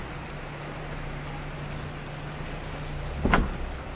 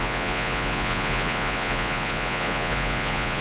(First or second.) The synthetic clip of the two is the second